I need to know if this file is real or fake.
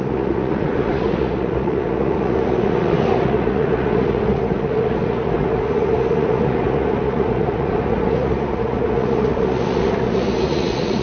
fake